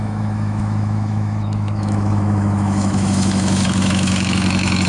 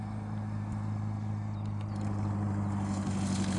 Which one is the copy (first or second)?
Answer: first